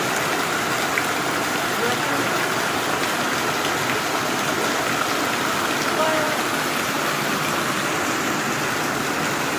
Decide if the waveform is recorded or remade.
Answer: recorded